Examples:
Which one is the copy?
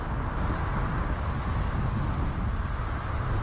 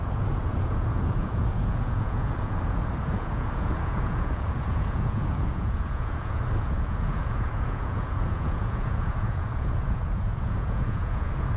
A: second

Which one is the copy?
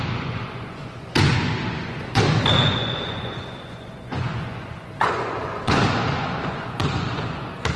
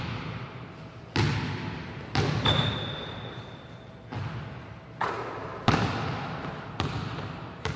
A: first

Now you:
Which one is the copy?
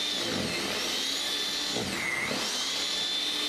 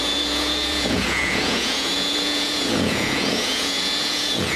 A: second